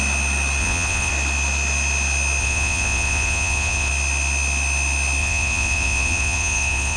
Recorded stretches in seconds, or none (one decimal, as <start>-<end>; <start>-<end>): 0.0-0.6; 1.1-2.4; 3.9-5.2